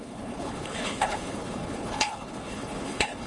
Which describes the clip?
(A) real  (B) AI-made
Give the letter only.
B